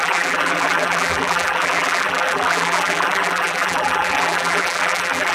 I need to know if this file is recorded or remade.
remade